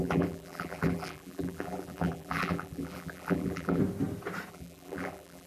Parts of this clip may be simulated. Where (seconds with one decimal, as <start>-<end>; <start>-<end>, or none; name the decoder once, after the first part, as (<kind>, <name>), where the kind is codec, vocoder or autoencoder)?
0.0-3.8 (vocoder, BigVGAN v2); 4.5-5.5